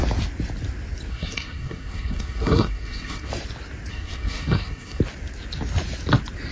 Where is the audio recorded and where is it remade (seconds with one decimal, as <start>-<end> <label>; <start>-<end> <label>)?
0.0-1.1 recorded; 1.1-3.3 remade; 3.3-3.9 recorded; 3.9-5.0 remade; 5.0-6.5 recorded